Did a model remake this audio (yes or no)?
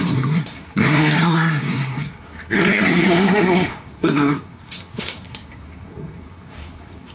yes